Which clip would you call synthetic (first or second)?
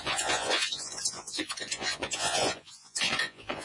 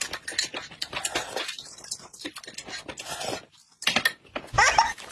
first